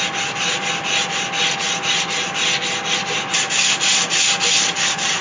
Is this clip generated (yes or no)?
no